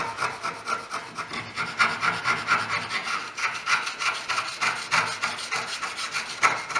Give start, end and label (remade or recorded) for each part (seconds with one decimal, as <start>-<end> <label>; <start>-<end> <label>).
0.0-6.8 recorded